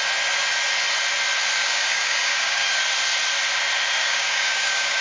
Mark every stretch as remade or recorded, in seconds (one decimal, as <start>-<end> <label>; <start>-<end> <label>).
0.0-1.6 recorded; 1.6-2.8 remade; 2.8-4.0 recorded; 4.0-5.0 remade